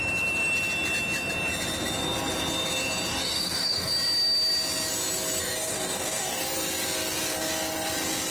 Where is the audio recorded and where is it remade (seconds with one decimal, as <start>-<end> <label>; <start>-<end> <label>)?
0.0-3.1 recorded; 3.1-3.9 remade; 3.9-5.4 recorded; 5.4-6.4 remade; 6.4-8.3 recorded